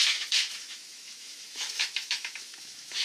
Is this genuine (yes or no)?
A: no